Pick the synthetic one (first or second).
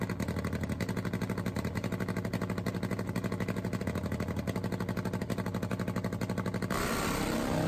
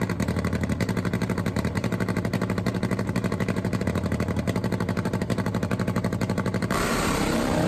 second